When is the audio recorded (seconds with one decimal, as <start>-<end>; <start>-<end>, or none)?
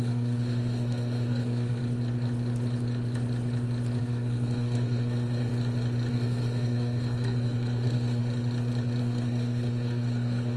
1.8-4.0; 5.5-6.1; 8.2-9.0